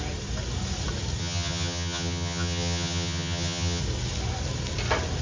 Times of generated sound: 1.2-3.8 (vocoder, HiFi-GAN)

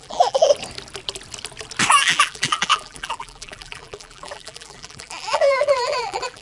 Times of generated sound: 0.0-0.5 (vocoder, BigVGAN v2); 1.9-6.4

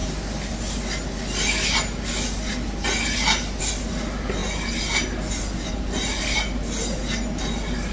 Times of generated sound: none

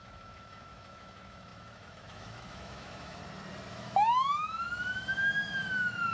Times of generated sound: 0.0-3.2 (autoencoder, DAC-VAE); 3.7-6.1

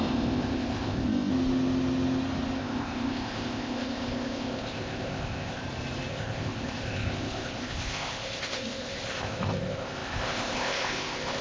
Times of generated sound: 0.0-1.3 (codec, ZipCodec); 2.6-5.6; 6.1-11.4

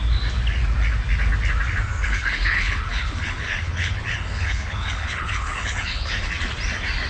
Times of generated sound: 2.0-6.3 (codec, HILCodec)

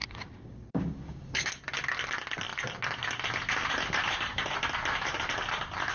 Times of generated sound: 0.0-1.5 (codec, DAC)

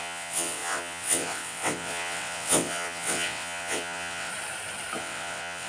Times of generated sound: 0.0-4.3 (vocoder, WaveNeXt); 5.0-5.7